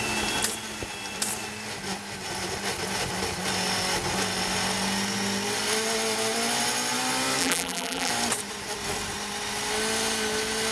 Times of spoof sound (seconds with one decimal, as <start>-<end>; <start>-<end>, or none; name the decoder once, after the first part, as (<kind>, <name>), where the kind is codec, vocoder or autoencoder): 7.4-8.1 (vocoder, BigVGAN v2)